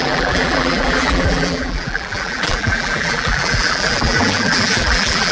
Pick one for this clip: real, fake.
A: fake